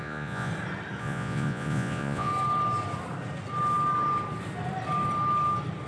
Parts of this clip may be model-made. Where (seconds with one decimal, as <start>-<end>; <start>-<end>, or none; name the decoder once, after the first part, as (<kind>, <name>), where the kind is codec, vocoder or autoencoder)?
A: 0.0-0.5 (vocoder, Vocos); 1.0-2.3

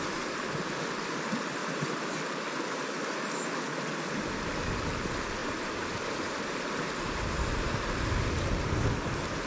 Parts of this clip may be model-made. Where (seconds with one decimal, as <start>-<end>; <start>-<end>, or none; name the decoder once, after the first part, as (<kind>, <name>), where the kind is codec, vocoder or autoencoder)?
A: 1.6-2.2 (vocoder, BigVGAN v2); 5.4-7.2

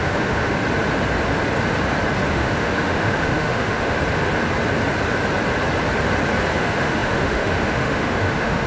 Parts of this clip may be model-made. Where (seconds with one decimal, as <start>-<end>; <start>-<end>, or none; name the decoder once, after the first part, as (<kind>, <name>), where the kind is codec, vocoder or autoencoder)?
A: 0.0-0.6 (autoencoder, DAC-VAE); 2.3-4.0; 6.6-8.7

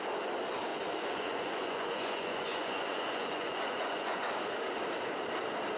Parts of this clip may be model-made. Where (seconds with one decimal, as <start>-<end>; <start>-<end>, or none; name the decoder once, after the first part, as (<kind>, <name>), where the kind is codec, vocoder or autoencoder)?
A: 0.7-4.2 (vocoder, Vocos)

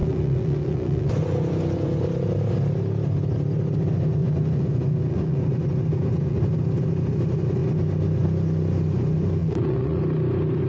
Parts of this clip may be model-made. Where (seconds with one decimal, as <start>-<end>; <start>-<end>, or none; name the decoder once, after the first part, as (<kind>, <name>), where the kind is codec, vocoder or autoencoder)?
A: 0.0-2.0 (vocoder, Vocos); 4.2-6.4; 9.4-10.0

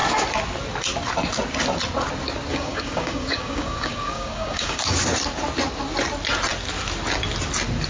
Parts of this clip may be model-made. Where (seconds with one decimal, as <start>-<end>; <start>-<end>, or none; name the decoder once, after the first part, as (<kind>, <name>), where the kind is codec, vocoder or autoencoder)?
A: 2.5-4.8 (codec, DAC)

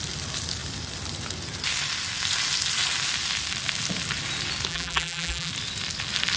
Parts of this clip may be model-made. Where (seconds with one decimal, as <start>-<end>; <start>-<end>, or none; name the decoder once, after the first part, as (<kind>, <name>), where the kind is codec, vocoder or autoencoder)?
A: 4.7-5.5 (vocoder, BigVGAN v2)